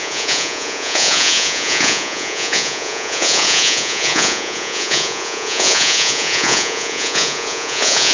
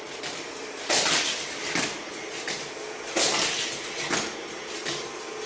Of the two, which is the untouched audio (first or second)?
second